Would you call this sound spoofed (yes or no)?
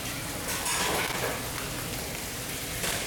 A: no